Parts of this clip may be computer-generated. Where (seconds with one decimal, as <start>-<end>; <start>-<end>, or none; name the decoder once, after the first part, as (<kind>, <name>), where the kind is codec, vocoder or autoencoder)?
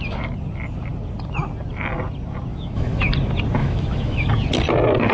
2.5-3.1 (autoencoder, DAC-VAE); 3.6-4.3